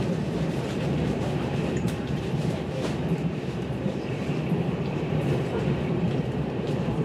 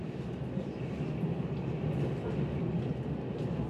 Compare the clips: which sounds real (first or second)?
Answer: second